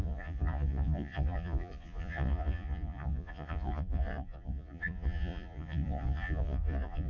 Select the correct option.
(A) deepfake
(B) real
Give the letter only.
A